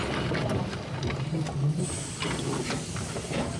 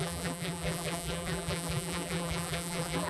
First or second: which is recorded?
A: first